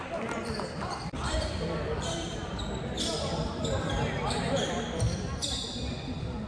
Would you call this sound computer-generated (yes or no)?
yes